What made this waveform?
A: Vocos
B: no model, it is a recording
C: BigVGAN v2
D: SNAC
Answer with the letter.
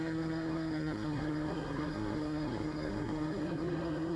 D